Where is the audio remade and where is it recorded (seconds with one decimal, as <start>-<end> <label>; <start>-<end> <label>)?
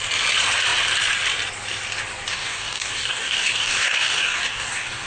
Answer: 0.0-2.3 recorded; 2.3-5.1 remade